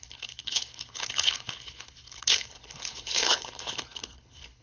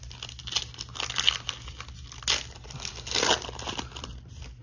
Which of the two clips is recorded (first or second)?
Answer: second